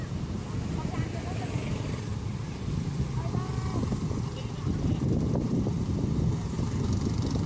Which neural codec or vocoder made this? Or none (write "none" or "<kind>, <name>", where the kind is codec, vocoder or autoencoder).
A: none